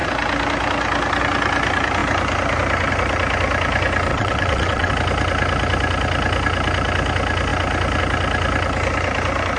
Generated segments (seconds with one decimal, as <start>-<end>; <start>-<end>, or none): 4.1-4.9